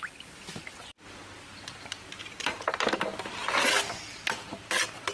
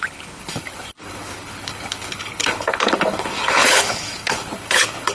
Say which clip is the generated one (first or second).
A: second